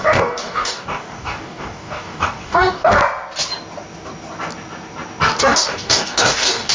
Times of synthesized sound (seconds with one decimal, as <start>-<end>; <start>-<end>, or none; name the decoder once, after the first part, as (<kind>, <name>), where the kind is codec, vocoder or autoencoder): 0.0-3.0 (codec, DAC); 5.4-6.7